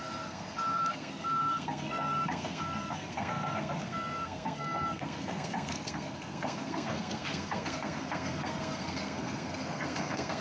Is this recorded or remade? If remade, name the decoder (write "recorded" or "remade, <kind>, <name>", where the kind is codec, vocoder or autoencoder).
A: remade, codec, SNAC